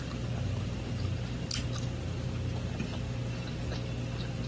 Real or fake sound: real